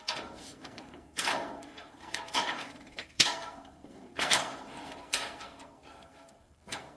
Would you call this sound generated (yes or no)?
yes